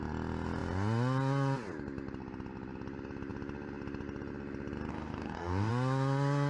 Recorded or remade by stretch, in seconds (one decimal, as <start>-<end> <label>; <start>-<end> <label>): 0.0-4.9 recorded; 4.9-5.7 remade; 5.7-6.5 recorded